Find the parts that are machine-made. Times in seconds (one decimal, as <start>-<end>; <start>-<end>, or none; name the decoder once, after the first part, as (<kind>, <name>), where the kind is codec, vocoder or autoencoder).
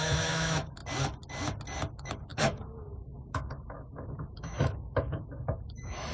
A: 0.0-0.8 (autoencoder, DAC-VAE); 1.9-6.1